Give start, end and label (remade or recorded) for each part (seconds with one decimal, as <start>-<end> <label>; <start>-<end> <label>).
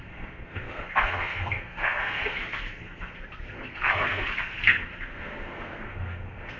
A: 0.0-6.6 remade